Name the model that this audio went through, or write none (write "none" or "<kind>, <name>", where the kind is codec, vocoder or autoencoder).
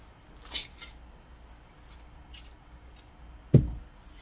none